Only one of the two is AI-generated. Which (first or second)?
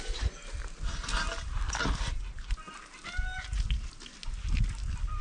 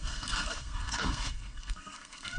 second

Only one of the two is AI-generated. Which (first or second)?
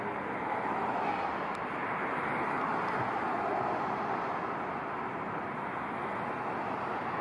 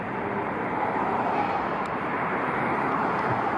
second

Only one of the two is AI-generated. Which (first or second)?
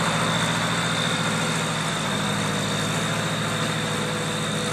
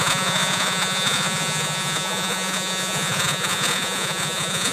second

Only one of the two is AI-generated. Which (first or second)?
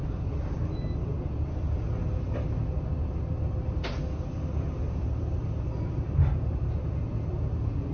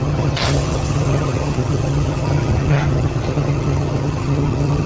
second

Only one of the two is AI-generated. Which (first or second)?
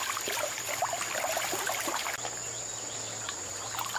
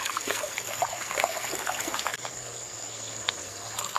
second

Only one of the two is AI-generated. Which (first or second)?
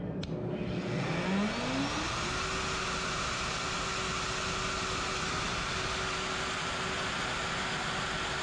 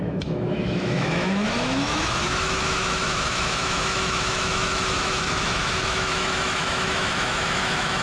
second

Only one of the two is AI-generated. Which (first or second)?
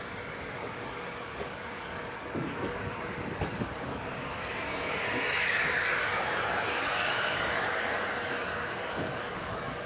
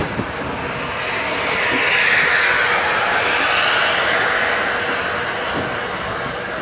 first